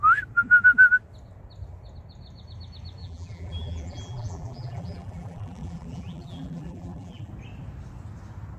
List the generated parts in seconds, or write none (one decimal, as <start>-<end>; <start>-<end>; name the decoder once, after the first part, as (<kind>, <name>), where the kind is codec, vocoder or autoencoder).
3.0-7.3 (vocoder, BigVGAN v2)